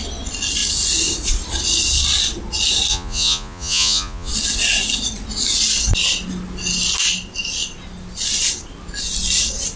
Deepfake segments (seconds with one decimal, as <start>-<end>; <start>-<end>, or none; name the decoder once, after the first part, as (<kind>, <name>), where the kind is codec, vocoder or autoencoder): 2.9-4.3 (vocoder, Vocos)